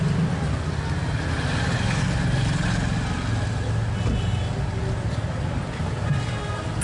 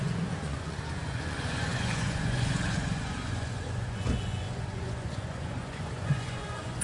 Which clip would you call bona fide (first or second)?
first